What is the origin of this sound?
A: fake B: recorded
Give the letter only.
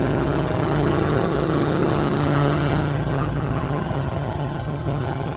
A